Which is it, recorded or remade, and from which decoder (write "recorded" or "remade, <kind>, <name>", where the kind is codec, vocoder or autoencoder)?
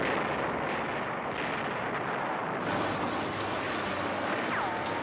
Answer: recorded